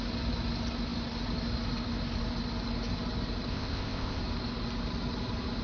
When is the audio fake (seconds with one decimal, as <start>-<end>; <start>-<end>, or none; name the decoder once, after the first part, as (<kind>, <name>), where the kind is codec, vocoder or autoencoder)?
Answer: 3.5-4.2 (codec, ZipCodec)